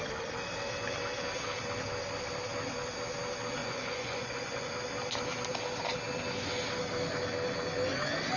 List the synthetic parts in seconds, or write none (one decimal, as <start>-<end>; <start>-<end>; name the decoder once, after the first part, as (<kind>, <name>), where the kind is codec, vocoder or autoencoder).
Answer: 3.6-4.7 (vocoder, Vocos)